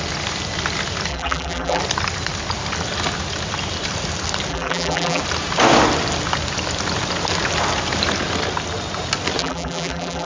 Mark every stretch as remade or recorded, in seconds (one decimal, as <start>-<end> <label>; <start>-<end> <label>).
0.0-1.1 recorded; 1.1-1.8 remade; 1.8-4.5 recorded; 4.5-5.2 remade; 5.2-9.4 recorded; 9.4-10.3 remade